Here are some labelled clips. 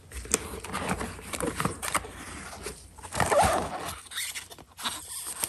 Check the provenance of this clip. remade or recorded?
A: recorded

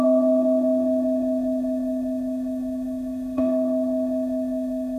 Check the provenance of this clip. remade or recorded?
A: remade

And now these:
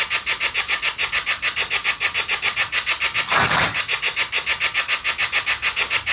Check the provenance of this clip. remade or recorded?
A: recorded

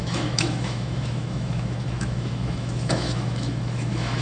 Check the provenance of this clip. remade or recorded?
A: remade